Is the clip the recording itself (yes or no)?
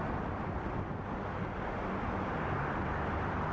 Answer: yes